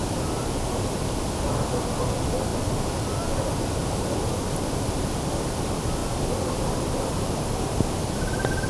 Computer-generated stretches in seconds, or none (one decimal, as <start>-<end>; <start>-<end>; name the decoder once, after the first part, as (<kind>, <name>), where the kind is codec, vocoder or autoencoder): none